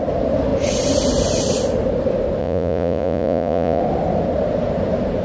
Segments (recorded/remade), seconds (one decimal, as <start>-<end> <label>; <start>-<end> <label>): 0.0-2.4 recorded; 2.4-3.8 remade; 3.8-5.2 recorded